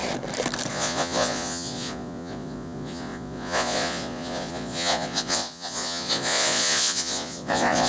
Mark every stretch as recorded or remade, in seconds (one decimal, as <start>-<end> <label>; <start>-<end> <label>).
0.0-0.7 recorded; 0.7-7.9 remade